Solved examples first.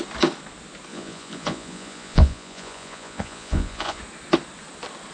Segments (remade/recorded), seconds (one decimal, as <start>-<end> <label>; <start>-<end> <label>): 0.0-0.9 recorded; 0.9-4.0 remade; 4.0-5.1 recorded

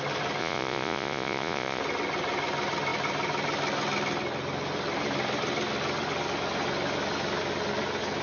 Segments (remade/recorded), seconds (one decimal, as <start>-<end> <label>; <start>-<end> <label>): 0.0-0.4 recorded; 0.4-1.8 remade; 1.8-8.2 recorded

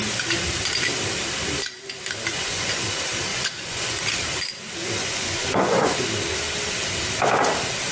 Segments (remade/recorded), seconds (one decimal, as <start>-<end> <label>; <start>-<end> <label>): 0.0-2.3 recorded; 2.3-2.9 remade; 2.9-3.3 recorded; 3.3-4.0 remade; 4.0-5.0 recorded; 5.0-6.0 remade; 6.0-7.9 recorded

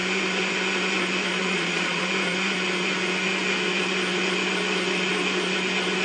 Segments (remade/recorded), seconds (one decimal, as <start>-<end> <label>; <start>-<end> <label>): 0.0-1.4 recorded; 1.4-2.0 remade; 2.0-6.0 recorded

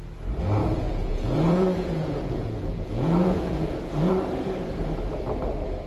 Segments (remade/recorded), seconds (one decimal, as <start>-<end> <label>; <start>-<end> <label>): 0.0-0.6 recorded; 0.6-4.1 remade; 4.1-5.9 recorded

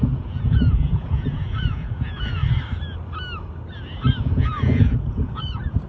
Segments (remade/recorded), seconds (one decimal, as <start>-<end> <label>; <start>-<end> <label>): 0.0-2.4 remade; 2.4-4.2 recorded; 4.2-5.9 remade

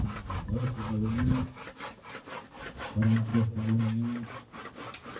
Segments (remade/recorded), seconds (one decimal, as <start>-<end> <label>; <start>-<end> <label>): 0.0-5.2 recorded

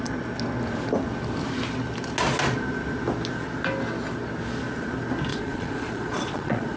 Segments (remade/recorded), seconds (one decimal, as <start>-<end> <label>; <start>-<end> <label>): 0.0-5.3 recorded; 5.3-6.8 remade